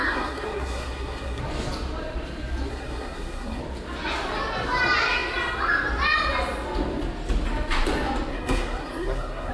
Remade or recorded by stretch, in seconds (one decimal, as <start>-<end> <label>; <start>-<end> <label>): 0.0-1.4 remade; 1.4-2.7 recorded; 2.7-3.6 remade; 3.6-8.3 recorded; 8.3-9.5 remade